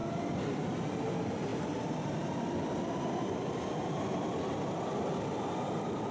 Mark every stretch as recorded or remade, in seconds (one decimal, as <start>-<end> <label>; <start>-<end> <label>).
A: 0.0-1.5 recorded; 1.5-5.2 remade; 5.2-6.1 recorded